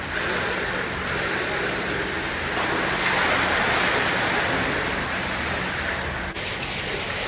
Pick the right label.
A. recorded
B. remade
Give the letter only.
A